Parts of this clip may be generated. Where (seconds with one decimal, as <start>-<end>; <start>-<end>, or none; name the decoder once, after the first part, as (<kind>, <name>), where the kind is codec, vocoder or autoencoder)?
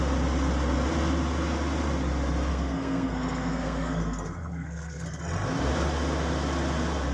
2.5-5.2 (codec, SNAC)